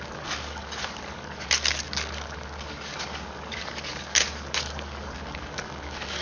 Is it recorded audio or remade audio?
remade